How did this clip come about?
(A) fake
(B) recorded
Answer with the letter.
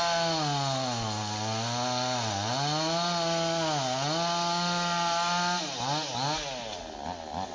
B